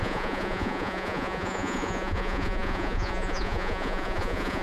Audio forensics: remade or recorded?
remade